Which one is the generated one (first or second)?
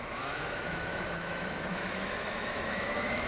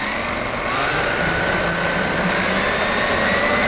first